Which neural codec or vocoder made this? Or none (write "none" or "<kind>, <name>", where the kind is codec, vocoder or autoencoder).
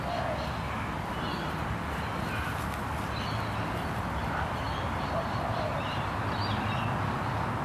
none